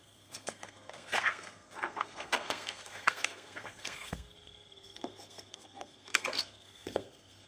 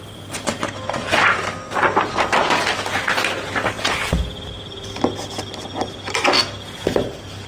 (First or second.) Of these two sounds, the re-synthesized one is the first